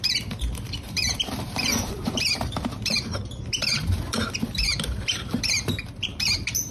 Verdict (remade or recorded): remade